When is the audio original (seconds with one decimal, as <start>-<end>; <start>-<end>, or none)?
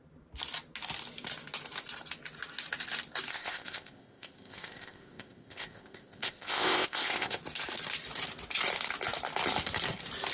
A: 0.0-3.3; 7.4-10.3